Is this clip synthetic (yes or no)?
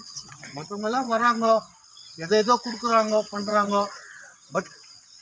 yes